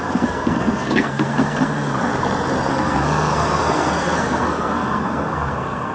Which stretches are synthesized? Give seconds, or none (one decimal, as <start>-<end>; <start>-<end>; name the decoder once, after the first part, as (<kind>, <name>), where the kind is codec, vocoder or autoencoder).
0.0-2.1 (codec, SNAC); 2.7-5.9